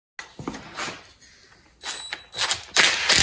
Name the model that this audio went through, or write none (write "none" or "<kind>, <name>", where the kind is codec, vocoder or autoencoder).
none